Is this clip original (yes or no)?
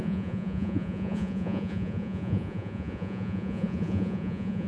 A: no